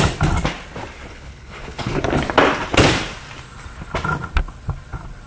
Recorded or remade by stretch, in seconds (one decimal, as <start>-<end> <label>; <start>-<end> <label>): 0.0-1.1 recorded; 1.1-2.0 remade; 2.0-5.3 recorded